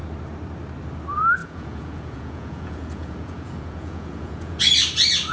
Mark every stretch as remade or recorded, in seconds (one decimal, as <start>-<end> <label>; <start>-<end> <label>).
0.0-1.4 recorded; 1.4-4.6 remade; 4.6-5.3 recorded